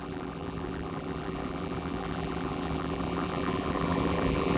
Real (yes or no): no